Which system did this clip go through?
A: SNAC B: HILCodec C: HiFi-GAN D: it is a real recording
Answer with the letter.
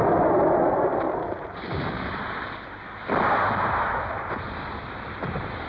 D